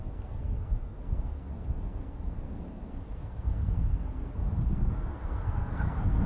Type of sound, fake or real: fake